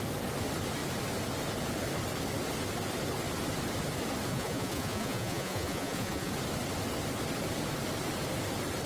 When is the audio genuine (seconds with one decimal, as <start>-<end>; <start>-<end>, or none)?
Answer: 0.0-4.3; 6.3-8.9